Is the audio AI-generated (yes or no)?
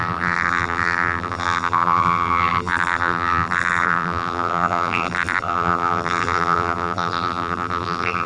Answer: yes